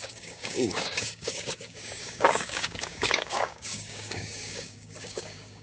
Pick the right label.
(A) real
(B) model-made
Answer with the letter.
B